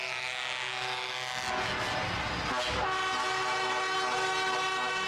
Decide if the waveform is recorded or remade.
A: recorded